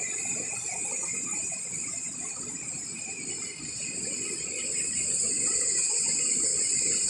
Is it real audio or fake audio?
real